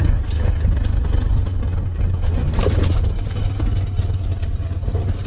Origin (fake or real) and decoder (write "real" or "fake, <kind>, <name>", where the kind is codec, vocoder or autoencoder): real